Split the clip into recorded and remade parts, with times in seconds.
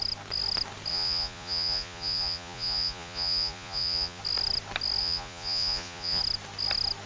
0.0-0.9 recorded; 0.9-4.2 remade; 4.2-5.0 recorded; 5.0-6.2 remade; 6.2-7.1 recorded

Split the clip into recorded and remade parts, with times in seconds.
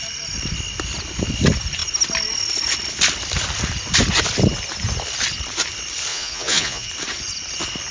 0.0-6.1 recorded; 6.1-6.9 remade; 6.9-7.9 recorded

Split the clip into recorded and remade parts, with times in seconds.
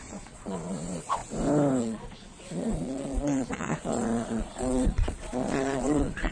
0.0-1.2 remade; 1.2-1.8 recorded; 1.8-6.3 remade